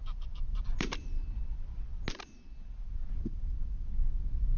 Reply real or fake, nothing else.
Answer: real